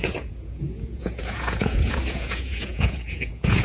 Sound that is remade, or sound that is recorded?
remade